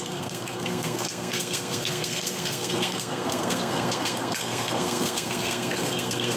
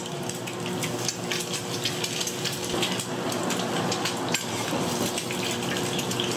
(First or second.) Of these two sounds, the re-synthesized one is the first